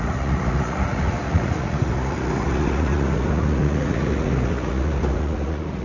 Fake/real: fake